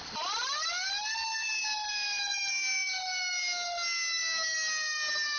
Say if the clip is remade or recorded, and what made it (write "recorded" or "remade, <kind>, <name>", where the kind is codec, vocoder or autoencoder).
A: recorded